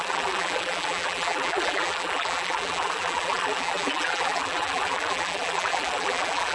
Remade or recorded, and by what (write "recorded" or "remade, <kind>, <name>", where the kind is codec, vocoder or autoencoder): remade, vocoder, BigVGAN v2